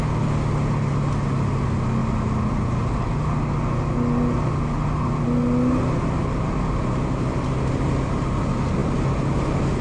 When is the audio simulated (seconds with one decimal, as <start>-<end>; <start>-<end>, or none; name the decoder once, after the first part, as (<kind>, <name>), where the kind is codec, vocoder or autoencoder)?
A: none